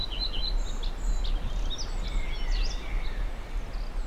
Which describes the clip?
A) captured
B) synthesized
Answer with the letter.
A